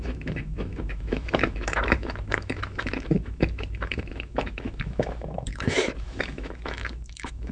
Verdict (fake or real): fake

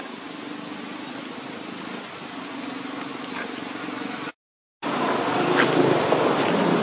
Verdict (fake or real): real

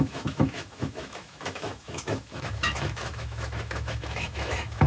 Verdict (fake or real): fake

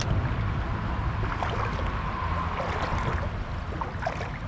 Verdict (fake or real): real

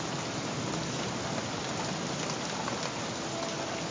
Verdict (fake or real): real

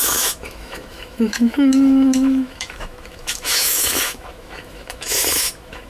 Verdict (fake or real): fake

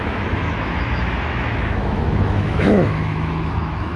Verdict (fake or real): fake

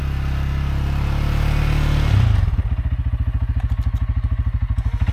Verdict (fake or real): real